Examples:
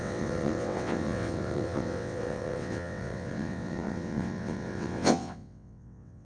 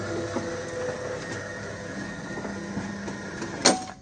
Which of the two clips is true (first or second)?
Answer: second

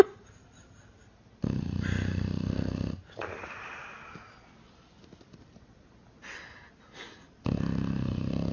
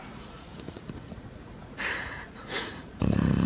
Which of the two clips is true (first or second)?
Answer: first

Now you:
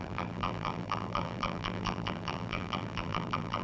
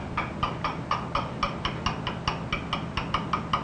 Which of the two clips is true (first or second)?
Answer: second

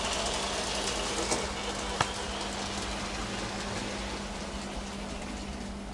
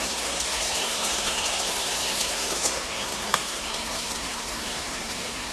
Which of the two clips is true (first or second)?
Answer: first